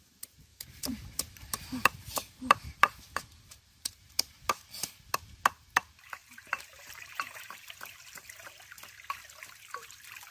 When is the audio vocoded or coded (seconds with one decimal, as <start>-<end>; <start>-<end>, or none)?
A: 0.5-4.5; 6.2-7.4